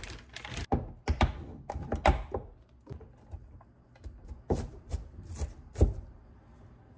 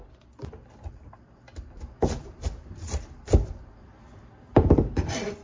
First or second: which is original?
first